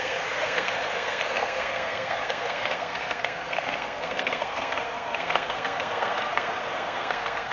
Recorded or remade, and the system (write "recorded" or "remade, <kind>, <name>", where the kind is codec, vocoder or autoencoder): remade, codec, SNAC